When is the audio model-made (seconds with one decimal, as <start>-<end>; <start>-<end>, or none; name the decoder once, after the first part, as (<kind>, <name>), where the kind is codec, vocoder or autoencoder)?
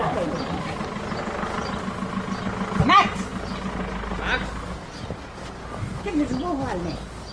none